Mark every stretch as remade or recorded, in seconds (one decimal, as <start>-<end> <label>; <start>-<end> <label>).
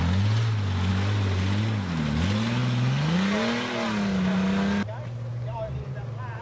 0.0-6.4 recorded